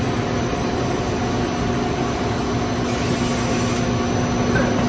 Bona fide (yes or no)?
yes